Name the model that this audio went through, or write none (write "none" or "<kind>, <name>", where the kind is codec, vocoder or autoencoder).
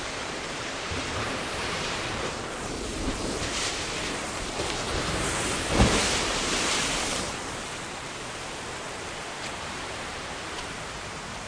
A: vocoder, BigVGAN v2